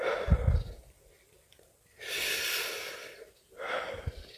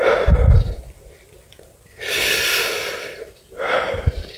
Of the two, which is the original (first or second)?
first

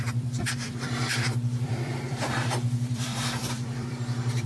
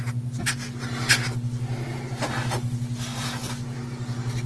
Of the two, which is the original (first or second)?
second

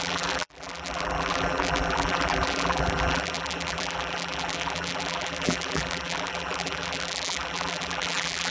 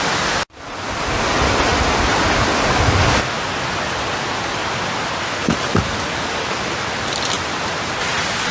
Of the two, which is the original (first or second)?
second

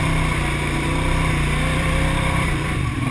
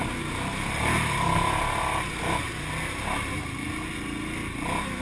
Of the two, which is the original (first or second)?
second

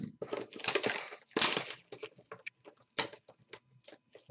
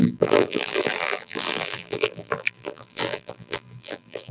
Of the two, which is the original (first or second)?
first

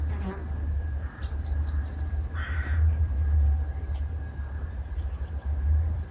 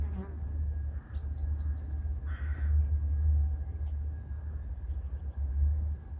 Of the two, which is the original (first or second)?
second